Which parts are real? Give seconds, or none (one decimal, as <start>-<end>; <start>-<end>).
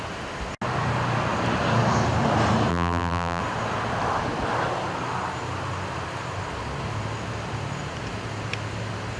0.0-2.7; 3.4-9.2